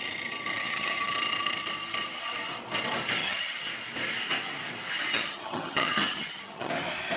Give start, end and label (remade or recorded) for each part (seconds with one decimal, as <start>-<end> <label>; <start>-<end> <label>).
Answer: 0.0-0.6 recorded; 0.6-1.1 remade; 1.1-3.2 recorded; 3.2-3.7 remade; 3.7-5.1 recorded; 5.1-6.7 remade; 6.7-7.2 recorded